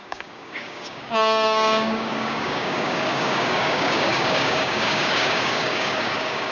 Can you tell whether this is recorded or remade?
remade